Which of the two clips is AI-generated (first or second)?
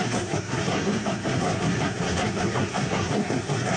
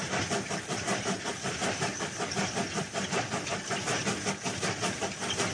first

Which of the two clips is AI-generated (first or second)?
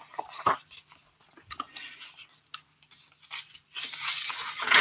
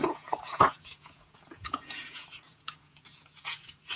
second